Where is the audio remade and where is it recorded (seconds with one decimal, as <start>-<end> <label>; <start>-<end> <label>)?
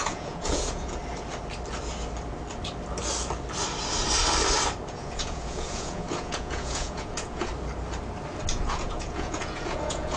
0.0-1.0 remade; 1.0-4.9 recorded; 4.9-7.5 remade; 7.5-8.5 recorded; 8.5-10.2 remade